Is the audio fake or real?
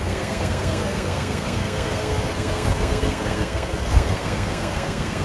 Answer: fake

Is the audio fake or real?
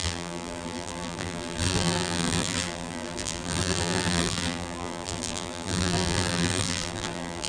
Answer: fake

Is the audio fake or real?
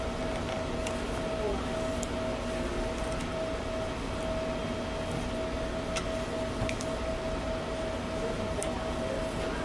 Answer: real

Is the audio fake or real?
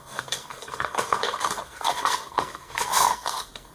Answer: fake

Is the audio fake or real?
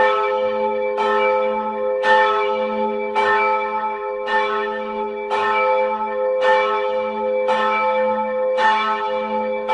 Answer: fake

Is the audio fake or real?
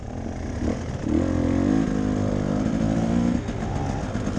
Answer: real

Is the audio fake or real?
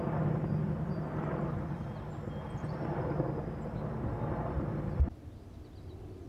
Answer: real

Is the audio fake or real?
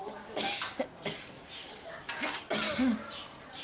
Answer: real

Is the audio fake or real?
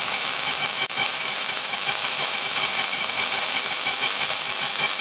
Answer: fake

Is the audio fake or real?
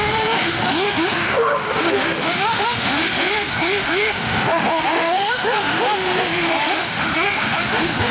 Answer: fake